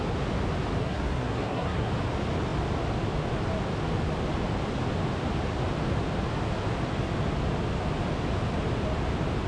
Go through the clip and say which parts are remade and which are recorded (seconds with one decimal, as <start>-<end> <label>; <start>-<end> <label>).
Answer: 0.0-0.8 recorded; 0.8-1.9 remade; 1.9-9.5 recorded